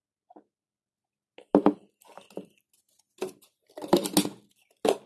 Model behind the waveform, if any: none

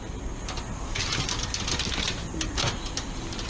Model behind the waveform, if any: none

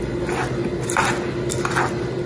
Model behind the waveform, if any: none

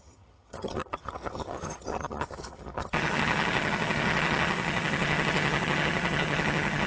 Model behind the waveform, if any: vocoder, HiFi-GAN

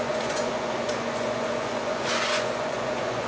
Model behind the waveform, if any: vocoder, Vocos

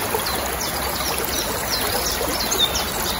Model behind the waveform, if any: none